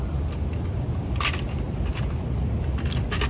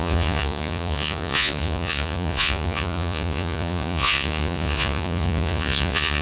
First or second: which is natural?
first